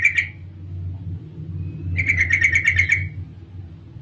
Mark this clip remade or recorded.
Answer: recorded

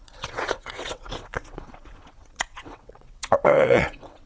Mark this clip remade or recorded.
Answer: remade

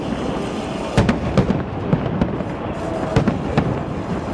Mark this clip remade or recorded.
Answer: recorded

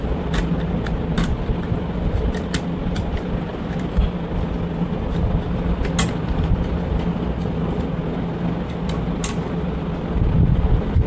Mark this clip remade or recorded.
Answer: recorded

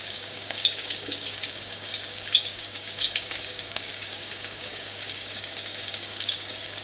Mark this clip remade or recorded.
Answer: remade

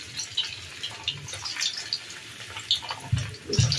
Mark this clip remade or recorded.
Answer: recorded